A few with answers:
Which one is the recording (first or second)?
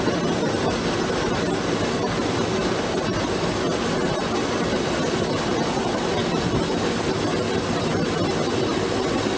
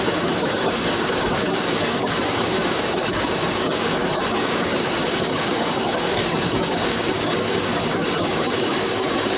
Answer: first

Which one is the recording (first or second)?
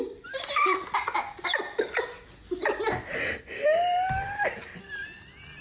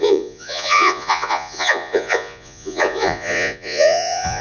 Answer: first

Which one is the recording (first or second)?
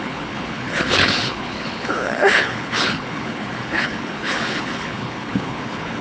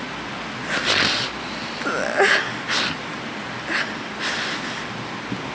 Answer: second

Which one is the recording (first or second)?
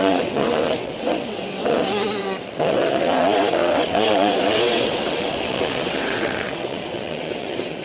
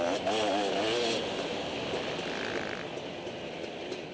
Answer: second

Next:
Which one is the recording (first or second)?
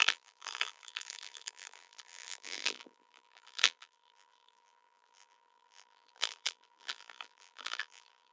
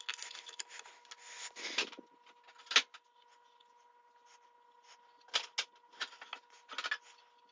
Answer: second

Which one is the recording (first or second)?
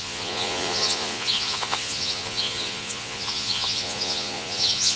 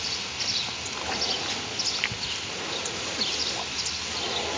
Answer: second